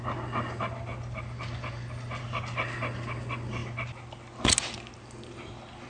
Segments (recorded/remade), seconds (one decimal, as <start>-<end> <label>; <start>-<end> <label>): 0.0-5.9 recorded